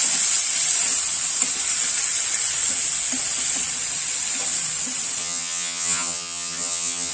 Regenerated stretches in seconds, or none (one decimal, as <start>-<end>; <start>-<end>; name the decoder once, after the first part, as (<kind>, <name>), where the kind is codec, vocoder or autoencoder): 5.2-7.1 (vocoder, HiFi-GAN)